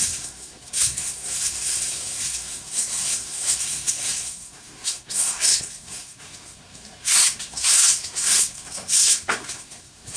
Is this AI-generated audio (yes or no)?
yes